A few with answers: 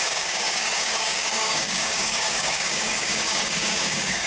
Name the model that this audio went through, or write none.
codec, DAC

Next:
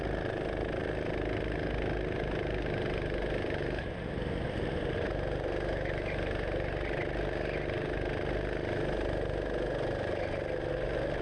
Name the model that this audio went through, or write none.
none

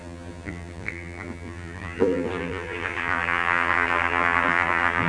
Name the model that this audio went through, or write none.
vocoder, BigVGAN v2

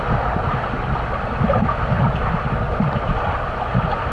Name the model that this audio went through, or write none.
none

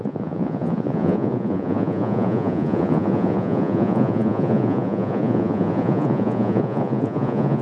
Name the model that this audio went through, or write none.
vocoder, Vocos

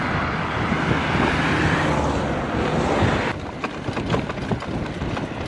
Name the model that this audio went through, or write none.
none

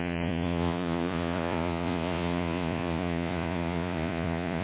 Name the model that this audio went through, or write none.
vocoder, Vocos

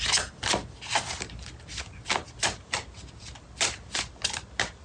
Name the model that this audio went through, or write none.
none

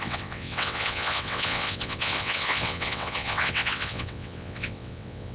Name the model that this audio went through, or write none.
vocoder, WaveNeXt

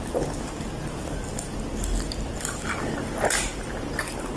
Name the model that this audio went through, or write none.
none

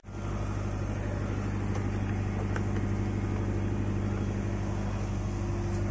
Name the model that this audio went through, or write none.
none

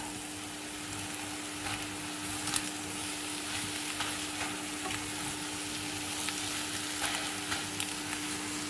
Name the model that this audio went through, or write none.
none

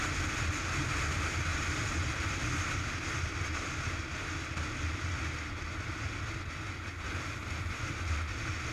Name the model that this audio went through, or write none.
none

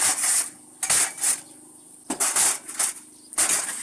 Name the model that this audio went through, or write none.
none